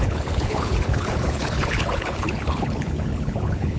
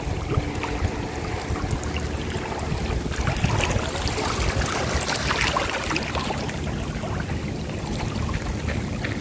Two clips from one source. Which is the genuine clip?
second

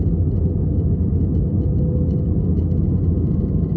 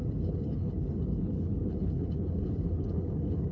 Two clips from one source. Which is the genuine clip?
first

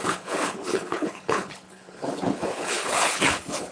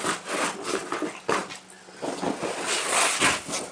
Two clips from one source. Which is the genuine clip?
second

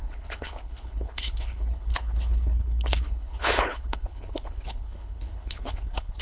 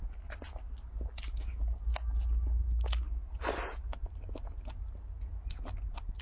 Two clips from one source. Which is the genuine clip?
second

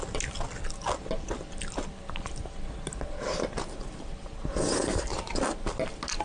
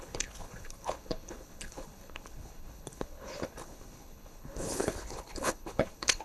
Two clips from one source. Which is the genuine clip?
first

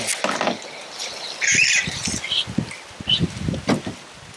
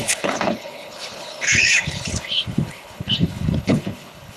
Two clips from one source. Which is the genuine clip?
first